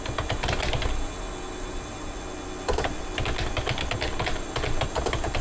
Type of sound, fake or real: real